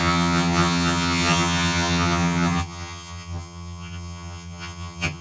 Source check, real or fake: fake